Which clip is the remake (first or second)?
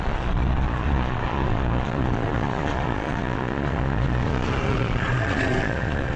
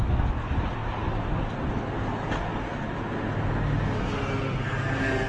first